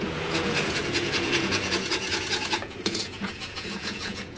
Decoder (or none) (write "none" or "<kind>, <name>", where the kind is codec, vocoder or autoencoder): vocoder, Vocos